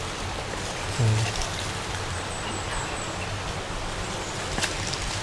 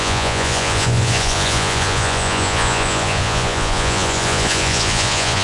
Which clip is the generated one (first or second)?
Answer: second